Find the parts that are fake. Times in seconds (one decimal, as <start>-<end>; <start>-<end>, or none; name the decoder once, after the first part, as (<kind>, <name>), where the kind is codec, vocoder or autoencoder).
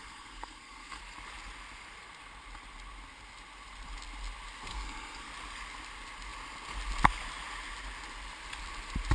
0.0-1.0 (codec, SNAC); 4.7-5.3